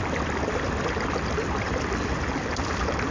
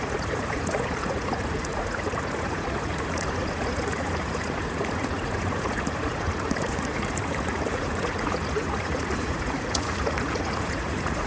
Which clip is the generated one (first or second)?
second